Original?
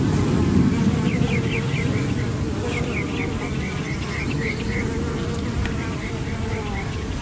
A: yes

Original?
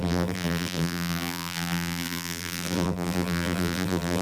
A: no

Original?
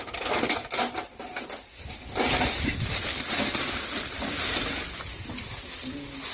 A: yes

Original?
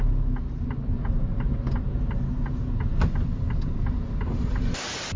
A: yes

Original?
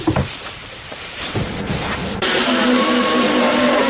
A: no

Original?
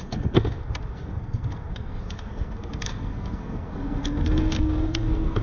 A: no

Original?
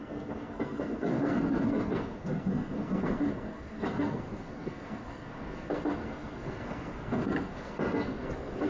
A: no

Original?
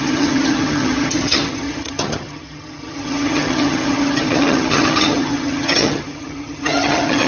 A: no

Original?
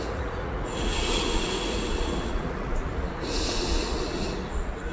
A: no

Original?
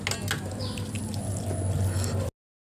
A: yes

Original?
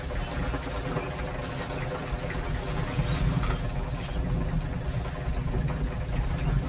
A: yes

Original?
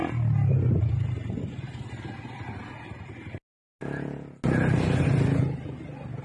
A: yes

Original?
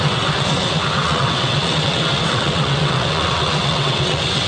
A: no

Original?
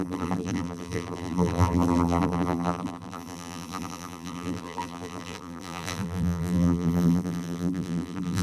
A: no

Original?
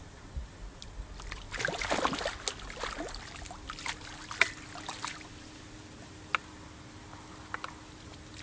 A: yes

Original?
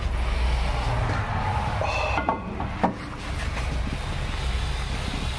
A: yes